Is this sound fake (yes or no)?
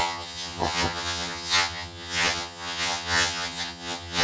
yes